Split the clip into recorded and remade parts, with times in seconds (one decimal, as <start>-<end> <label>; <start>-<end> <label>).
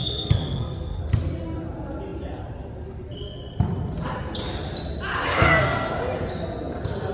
0.0-1.0 remade; 1.0-5.3 recorded; 5.3-5.9 remade; 5.9-7.1 recorded